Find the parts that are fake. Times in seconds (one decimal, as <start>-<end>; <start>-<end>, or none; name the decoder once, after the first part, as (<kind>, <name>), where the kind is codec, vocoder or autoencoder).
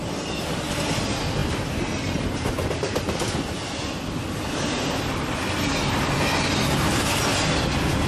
none